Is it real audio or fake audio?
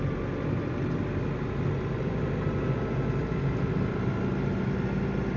real